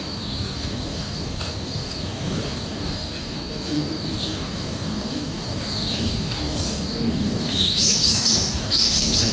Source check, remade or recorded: remade